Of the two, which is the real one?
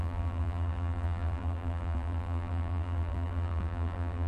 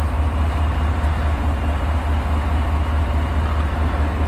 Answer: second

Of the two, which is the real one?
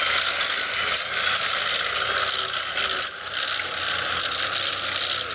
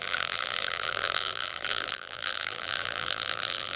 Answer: first